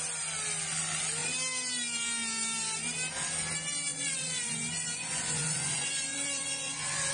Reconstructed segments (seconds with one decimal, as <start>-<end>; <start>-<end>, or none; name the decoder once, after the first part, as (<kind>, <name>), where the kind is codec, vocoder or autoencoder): 3.9-7.1 (vocoder, Vocos)